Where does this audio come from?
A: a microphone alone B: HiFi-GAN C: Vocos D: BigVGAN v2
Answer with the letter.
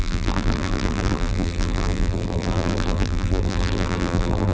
D